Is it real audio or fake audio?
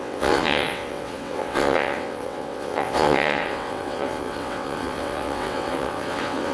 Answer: fake